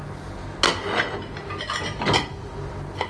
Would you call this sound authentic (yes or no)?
yes